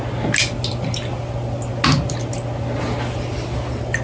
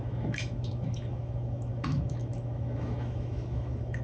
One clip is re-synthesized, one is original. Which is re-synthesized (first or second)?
second